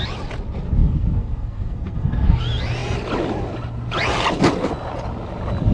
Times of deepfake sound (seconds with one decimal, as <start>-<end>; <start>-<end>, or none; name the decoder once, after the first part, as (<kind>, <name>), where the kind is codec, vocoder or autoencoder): 0.8-2.4 (codec, SNAC)

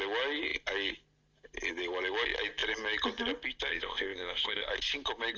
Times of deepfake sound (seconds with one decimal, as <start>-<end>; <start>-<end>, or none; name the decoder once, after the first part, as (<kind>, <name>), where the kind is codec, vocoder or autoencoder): 3.7-4.7 (codec, ZipCodec)

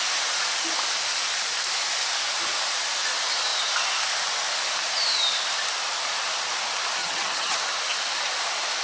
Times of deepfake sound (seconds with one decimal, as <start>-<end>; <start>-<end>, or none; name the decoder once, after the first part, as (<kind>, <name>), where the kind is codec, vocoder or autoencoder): 7.0-7.6 (vocoder, HiFi-GAN)

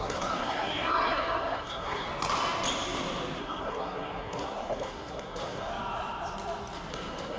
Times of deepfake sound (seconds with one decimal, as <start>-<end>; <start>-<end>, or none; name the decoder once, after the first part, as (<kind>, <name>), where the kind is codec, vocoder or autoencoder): 0.0-2.1 (codec, SNAC); 3.4-5.7; 6.9-7.4

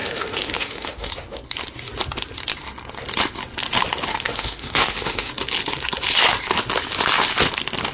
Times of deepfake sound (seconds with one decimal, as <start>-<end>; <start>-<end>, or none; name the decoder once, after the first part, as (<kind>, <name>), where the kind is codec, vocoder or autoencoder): 0.0-1.1 (autoencoder, DAC-VAE); 4.1-5.3

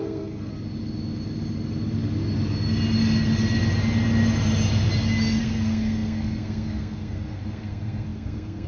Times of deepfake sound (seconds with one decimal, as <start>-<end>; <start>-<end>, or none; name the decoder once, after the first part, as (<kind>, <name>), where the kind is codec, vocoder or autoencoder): 0.0-0.5 (codec, SNAC); 5.4-8.7

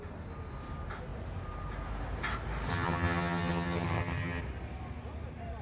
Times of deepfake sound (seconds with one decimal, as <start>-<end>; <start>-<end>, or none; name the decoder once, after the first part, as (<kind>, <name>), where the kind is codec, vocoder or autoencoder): 2.7-4.4 (vocoder, HiFi-GAN)

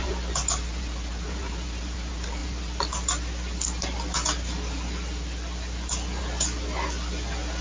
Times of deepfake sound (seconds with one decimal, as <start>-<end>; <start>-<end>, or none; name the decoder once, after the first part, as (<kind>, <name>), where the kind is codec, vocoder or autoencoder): none